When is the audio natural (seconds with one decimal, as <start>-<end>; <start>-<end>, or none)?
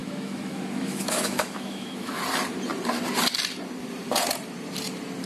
2.2-5.3